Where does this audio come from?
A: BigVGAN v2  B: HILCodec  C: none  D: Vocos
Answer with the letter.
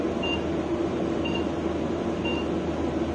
C